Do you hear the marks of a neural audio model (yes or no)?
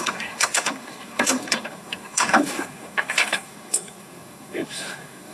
yes